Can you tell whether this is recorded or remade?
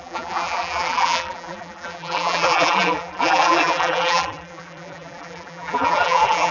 remade